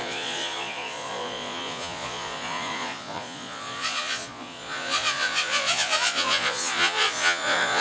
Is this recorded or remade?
remade